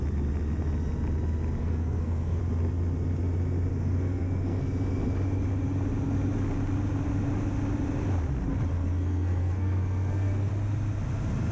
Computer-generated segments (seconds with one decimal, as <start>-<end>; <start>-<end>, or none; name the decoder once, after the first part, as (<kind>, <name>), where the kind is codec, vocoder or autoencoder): 1.6-2.4 (codec, SNAC); 3.7-4.6; 8.7-10.5